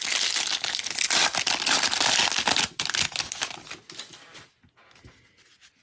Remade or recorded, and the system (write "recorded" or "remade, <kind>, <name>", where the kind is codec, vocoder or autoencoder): recorded